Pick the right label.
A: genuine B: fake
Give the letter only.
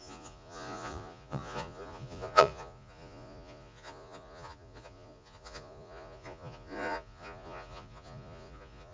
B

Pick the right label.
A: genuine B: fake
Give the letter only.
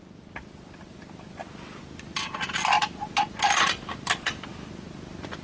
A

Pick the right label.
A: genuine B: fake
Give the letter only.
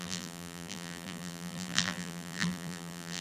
B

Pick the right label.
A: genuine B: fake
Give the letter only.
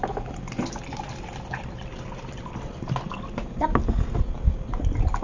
A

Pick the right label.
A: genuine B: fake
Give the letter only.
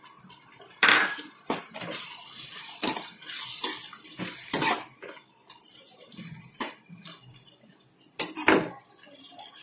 B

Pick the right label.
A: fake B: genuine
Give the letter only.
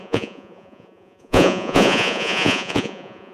A